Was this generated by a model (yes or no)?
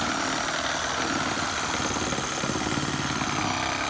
no